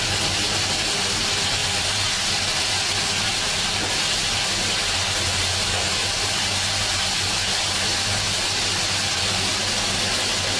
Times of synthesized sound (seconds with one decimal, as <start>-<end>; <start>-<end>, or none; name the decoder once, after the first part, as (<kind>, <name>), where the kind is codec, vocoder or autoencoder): none